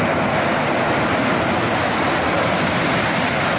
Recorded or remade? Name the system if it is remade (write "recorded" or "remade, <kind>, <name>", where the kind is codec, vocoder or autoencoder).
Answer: recorded